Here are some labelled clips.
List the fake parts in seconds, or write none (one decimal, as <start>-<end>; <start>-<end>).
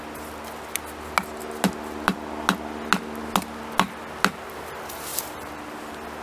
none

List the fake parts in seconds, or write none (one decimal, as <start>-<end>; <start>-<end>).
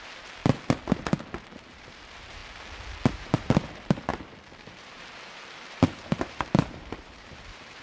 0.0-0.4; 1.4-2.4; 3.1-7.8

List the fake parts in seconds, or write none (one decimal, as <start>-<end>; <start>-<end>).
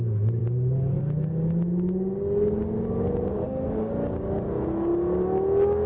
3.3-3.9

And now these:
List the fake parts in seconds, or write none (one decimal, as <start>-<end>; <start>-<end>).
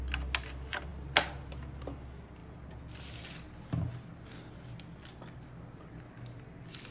none